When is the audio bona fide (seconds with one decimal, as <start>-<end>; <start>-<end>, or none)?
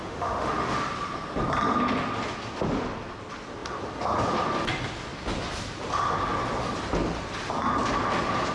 0.8-8.5